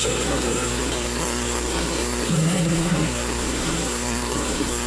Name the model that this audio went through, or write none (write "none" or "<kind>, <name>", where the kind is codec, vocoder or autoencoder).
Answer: codec, SNAC